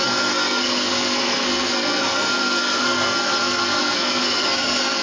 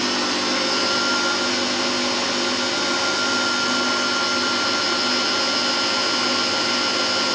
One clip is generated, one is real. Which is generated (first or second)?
first